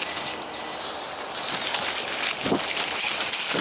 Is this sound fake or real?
real